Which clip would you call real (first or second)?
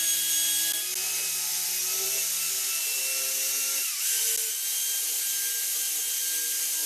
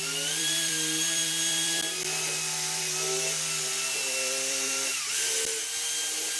first